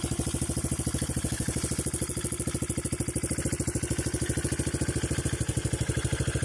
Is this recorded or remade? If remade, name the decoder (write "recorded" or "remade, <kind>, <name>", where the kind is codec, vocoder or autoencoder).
recorded